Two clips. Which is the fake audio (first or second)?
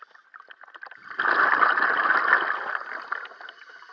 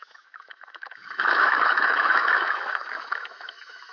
second